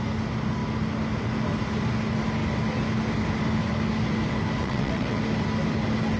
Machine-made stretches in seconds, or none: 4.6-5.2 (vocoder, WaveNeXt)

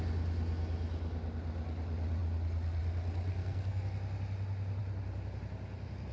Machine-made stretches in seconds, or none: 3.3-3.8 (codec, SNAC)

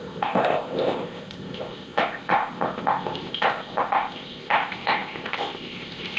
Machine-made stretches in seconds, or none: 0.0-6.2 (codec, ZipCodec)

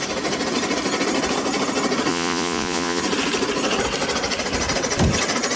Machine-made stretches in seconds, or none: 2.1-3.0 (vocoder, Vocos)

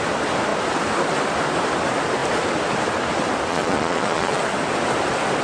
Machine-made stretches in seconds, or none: 3.5-4.4 (vocoder, Vocos)